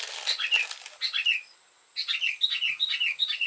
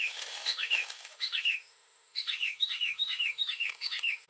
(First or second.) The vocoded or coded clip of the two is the second